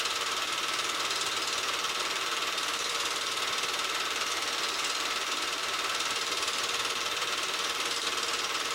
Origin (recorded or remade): remade